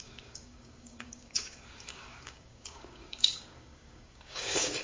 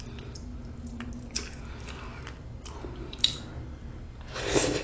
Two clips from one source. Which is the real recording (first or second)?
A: second